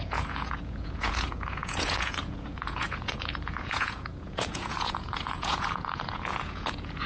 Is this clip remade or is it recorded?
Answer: remade